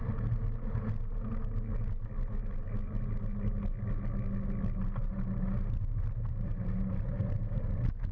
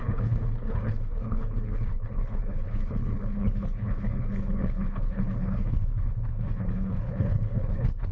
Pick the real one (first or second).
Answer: first